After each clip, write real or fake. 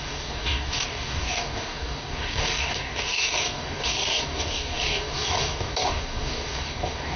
fake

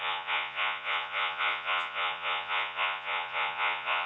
fake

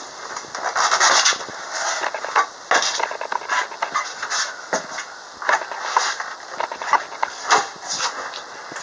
real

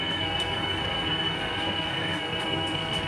fake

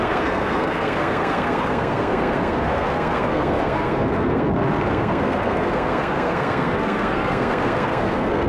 fake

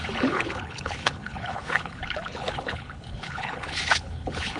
fake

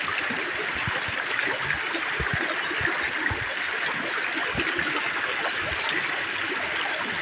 real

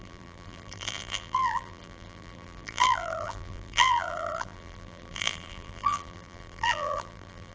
fake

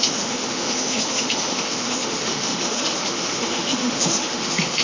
fake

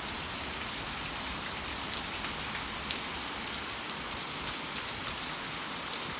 real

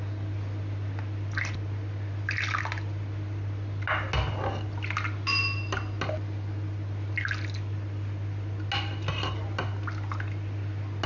real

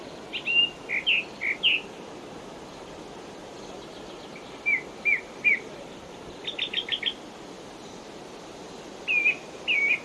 real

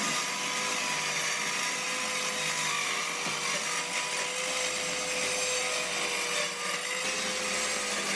real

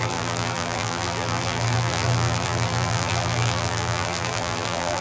fake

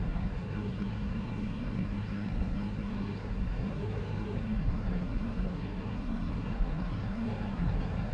fake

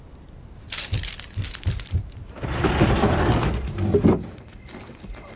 real